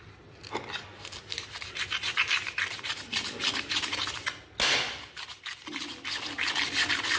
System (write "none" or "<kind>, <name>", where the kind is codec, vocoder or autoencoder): none